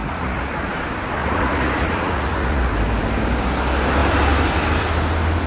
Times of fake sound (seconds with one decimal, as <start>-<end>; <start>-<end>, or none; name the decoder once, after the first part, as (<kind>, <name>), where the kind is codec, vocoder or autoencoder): 0.0-0.7 (vocoder, Vocos); 1.2-2.7